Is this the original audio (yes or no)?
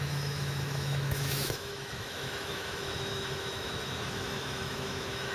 no